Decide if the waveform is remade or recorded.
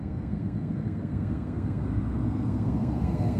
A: remade